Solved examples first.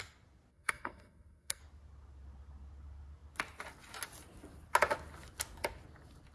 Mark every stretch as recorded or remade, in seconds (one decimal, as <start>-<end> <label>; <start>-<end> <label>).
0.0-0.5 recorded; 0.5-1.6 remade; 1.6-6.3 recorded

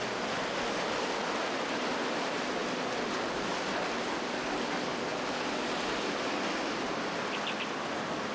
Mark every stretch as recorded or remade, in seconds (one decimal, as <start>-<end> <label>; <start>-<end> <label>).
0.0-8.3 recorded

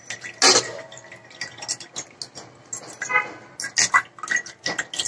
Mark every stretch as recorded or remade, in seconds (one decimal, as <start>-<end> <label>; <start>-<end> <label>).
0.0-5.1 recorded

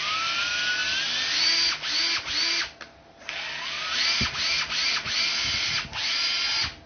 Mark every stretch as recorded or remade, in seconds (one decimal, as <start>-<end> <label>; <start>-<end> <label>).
0.0-6.9 recorded